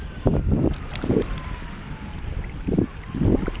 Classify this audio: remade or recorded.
recorded